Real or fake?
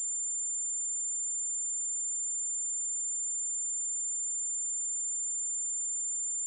real